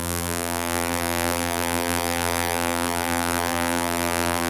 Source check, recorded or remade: remade